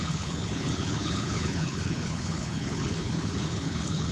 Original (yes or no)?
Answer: no